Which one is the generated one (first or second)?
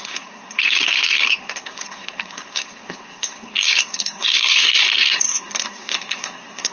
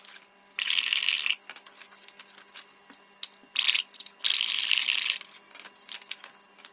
first